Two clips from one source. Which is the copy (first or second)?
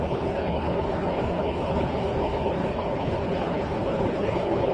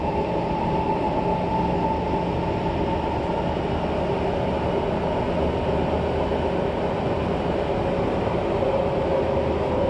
first